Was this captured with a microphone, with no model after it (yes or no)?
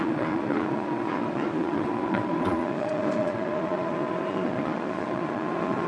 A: no